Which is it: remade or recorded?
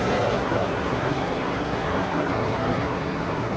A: remade